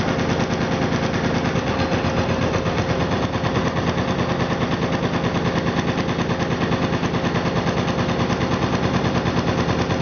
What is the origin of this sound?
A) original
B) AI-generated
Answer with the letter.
A